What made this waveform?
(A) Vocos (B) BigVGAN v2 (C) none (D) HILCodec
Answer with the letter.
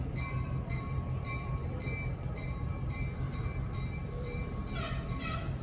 B